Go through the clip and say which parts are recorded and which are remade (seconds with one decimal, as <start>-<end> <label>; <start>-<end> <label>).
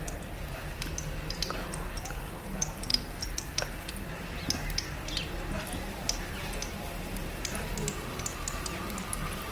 0.0-9.5 recorded